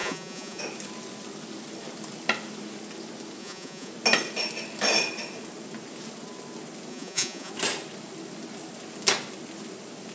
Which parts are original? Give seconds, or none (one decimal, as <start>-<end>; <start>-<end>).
0.6-3.4; 3.9-6.9; 7.5-10.1